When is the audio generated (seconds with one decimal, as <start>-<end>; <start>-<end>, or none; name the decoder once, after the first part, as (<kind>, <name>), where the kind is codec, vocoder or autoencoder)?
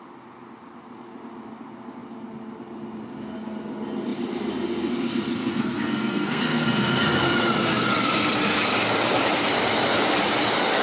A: 5.4-7.0 (codec, SNAC)